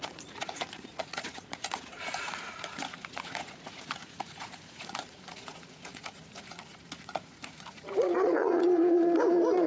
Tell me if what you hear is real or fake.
fake